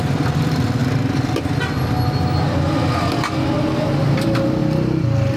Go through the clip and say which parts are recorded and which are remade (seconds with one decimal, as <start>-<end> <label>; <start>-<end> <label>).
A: 0.0-0.8 remade; 0.8-4.0 recorded; 4.0-4.6 remade; 4.6-5.4 recorded